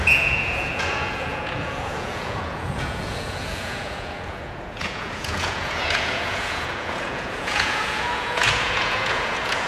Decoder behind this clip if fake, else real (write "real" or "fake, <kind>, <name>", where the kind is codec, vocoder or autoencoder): fake, vocoder, Vocos